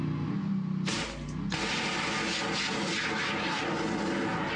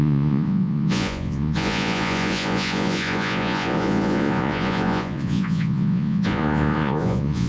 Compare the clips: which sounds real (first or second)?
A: first